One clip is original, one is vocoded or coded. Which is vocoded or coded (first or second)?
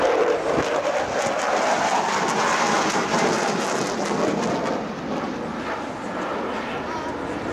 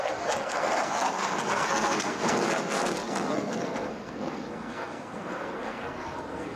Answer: second